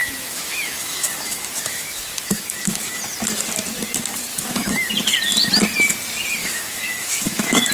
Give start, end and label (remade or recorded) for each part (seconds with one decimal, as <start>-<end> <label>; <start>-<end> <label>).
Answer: 0.0-3.0 remade; 3.0-4.3 recorded; 4.3-4.9 remade; 4.9-6.4 recorded; 6.4-7.7 remade